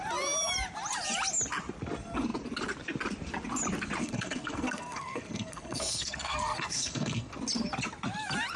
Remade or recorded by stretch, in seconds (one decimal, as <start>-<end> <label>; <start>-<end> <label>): 0.0-4.0 recorded; 4.0-7.3 remade; 7.3-8.6 recorded